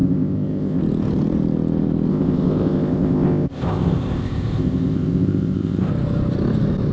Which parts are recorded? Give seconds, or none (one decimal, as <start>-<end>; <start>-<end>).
0.8-2.1; 5.9-6.9